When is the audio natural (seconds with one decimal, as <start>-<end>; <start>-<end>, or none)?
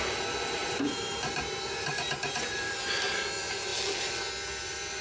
0.0-0.6; 2.8-5.0